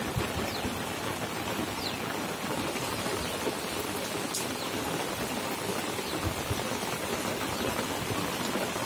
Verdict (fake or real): real